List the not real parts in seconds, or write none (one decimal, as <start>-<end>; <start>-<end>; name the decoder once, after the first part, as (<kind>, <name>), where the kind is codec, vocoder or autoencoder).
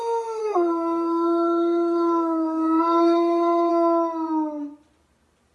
0.4-3.7 (codec, SNAC)